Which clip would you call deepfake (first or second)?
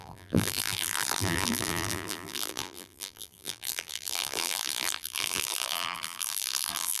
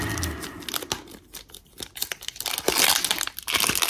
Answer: first